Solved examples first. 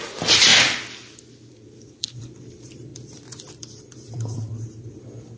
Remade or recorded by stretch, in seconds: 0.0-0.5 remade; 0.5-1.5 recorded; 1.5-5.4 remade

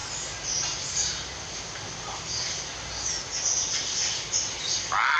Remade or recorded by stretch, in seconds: 0.0-4.0 recorded; 4.0-5.2 remade

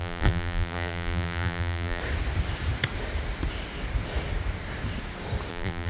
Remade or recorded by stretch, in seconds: 0.0-2.0 remade; 2.0-5.5 recorded; 5.5-5.9 remade